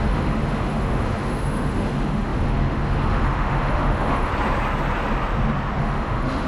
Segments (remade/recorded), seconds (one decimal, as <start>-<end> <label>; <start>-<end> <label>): 0.0-4.3 remade; 4.3-5.8 recorded; 5.8-6.5 remade